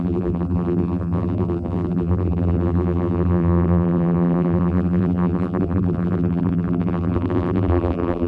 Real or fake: fake